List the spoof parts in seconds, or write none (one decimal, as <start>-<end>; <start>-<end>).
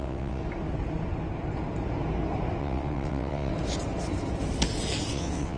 0.0-0.4; 2.6-3.5; 5.1-5.6